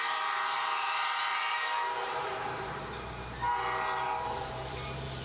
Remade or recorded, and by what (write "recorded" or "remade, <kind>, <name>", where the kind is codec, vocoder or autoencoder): remade, vocoder, BigVGAN v2